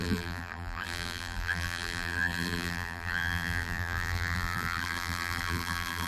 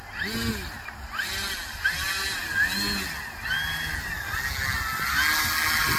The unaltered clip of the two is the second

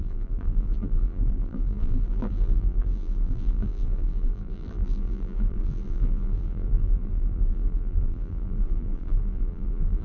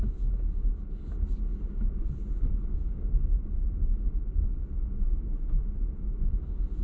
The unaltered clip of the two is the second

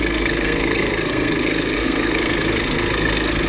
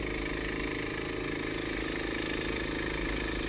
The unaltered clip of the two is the second